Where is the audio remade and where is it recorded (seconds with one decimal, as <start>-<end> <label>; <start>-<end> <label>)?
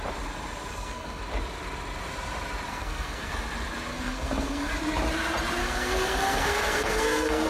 0.0-0.7 recorded; 0.7-1.2 remade; 1.2-2.7 recorded; 2.7-3.3 remade; 3.3-3.9 recorded; 3.9-4.7 remade; 4.7-5.6 recorded; 5.6-7.5 remade